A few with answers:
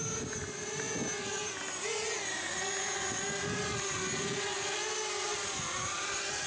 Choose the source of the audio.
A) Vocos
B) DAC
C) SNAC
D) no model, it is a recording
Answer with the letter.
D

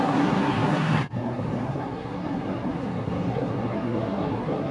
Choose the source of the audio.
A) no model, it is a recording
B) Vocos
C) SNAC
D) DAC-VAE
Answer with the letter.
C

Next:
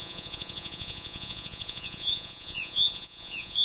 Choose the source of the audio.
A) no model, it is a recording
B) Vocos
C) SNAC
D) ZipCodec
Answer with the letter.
B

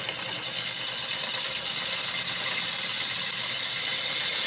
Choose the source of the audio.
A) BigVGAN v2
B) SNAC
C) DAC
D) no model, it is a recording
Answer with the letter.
D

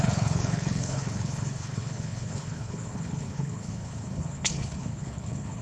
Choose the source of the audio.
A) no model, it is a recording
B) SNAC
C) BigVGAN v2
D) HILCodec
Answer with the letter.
D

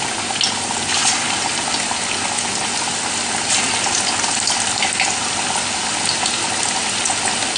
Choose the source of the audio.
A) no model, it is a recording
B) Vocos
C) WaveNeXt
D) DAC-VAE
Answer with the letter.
A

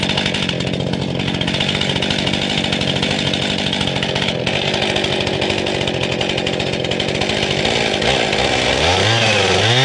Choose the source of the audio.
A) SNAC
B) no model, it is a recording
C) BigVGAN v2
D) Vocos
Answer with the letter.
B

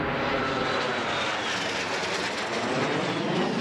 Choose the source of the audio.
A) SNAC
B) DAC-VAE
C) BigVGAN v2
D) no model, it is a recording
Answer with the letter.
D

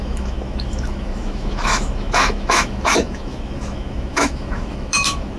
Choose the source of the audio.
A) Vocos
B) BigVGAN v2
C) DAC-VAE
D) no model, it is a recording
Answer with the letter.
C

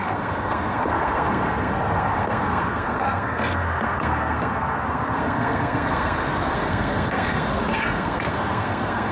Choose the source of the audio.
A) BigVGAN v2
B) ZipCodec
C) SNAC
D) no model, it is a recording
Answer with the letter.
C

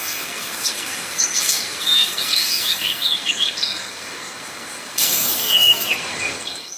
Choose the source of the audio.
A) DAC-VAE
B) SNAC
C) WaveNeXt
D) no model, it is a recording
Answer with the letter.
B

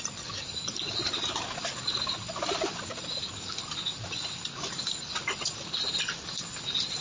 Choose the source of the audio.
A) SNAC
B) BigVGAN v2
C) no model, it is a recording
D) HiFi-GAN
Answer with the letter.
C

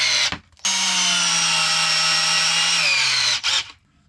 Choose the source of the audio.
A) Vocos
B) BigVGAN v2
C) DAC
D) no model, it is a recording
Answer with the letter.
D